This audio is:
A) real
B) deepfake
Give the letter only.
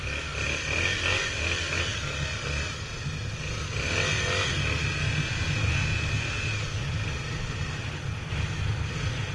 A